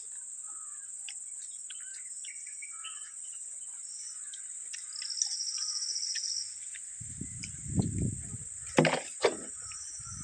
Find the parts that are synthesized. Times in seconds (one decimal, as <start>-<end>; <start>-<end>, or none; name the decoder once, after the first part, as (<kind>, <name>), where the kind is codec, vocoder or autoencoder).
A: 5.3-6.3 (vocoder, Vocos)